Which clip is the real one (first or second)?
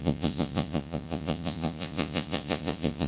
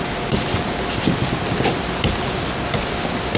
second